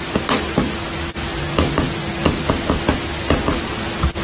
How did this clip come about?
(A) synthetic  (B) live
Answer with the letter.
B